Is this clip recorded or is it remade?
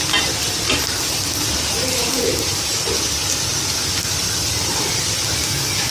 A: recorded